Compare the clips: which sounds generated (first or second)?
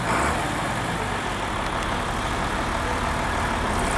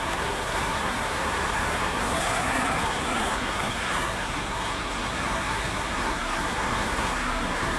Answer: second